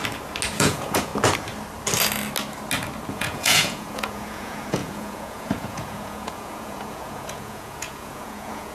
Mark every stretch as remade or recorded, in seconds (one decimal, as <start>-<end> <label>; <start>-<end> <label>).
0.0-0.6 recorded; 0.6-1.1 remade; 1.1-3.1 recorded; 3.1-8.7 remade